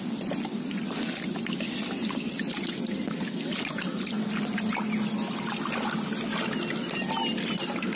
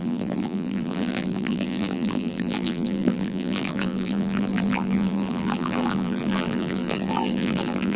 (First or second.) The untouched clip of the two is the first